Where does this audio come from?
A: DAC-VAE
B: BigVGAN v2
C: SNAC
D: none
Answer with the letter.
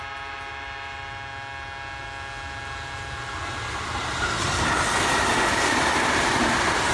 D